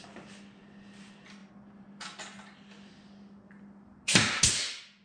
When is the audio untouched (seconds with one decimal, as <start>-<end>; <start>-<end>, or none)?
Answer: 0.0-5.0